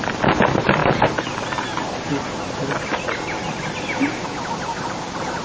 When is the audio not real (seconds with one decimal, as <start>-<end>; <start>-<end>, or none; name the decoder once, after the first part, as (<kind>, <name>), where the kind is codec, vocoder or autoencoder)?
none